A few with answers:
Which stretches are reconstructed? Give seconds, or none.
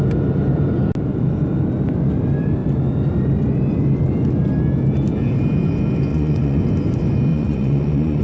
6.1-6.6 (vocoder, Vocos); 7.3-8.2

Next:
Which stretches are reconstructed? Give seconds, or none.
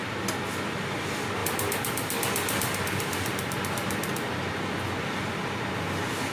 1.4-4.4 (vocoder, BigVGAN v2)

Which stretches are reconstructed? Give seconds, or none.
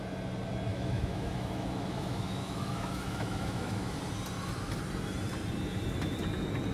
0.7-4.0 (autoencoder, DAC-VAE)